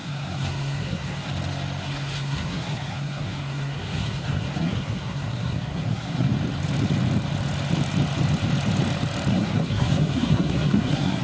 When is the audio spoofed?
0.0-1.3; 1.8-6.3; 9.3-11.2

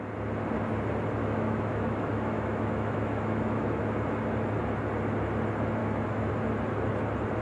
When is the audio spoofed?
1.2-3.8; 5.8-6.3

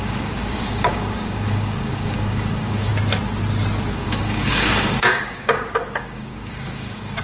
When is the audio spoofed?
0.0-2.9; 3.9-7.2